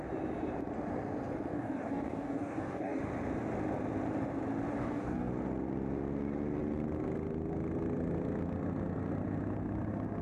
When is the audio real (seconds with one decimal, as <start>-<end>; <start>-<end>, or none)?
0.0-1.5; 3.0-4.7; 5.3-10.2